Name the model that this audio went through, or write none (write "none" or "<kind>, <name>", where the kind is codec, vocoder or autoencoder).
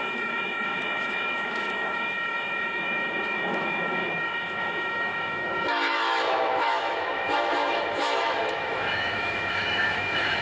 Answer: autoencoder, DAC-VAE